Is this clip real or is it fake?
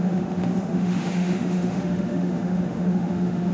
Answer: fake